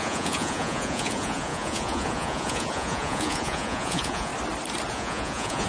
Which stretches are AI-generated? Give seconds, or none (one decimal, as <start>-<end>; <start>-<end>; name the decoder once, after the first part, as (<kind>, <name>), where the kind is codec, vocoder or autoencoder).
0.0-4.3 (vocoder, Vocos); 4.9-5.7